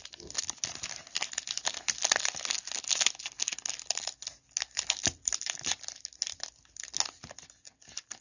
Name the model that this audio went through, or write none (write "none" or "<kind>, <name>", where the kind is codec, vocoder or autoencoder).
none